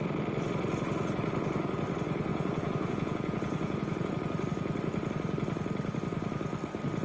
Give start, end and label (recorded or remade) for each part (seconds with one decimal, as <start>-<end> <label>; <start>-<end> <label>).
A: 0.0-2.3 recorded; 2.3-4.1 remade; 4.1-7.0 recorded